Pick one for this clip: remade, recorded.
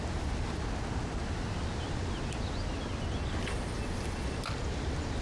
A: recorded